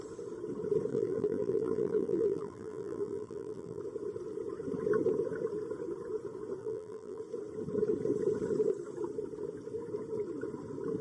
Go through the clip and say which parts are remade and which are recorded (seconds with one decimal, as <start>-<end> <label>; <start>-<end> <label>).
0.0-0.9 recorded; 0.9-3.8 remade; 3.8-6.6 recorded; 6.6-7.2 remade; 7.2-11.0 recorded